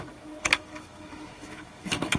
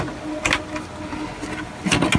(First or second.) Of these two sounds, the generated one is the first